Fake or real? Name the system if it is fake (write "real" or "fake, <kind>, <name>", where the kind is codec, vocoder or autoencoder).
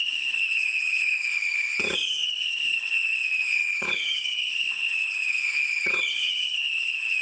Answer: fake, codec, HILCodec